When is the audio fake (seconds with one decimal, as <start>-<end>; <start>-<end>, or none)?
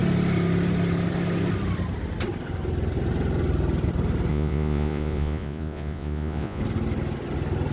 4.3-6.6